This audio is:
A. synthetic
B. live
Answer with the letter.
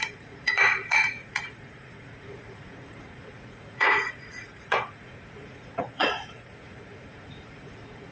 A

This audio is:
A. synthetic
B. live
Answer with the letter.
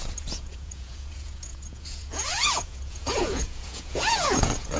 A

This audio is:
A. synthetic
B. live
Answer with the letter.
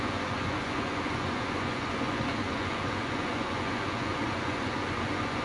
A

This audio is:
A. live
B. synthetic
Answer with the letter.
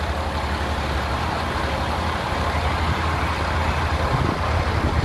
A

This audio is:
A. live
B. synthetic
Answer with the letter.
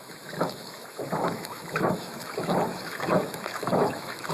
B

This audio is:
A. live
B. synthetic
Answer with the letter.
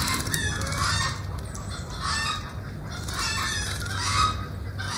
A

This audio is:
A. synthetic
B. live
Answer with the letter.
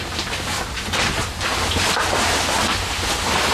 B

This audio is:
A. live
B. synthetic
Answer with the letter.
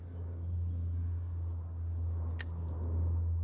A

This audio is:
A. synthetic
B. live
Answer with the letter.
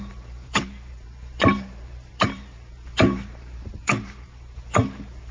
A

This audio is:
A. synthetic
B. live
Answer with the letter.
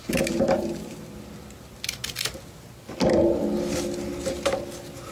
B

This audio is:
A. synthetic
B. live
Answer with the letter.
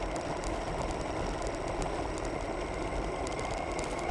B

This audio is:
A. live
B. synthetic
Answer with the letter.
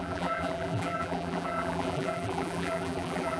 B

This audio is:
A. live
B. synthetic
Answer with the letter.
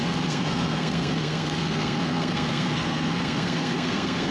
B